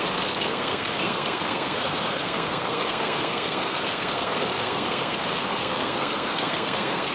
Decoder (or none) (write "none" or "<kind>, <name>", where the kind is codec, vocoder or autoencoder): codec, SNAC